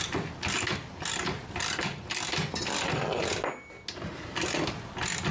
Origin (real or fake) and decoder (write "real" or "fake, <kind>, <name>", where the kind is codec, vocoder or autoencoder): real